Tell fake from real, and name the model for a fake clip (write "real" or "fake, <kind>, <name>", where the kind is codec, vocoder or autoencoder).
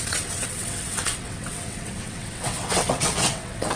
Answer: fake, vocoder, WaveNeXt